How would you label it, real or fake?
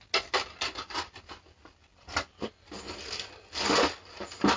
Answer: real